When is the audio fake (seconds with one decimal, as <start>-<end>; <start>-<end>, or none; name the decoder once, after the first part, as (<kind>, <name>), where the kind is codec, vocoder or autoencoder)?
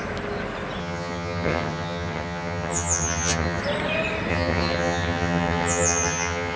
0.8-3.6 (vocoder, HiFi-GAN); 4.3-6.6